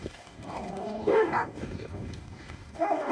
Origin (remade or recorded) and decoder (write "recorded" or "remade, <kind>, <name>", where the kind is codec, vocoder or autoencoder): remade, codec, DAC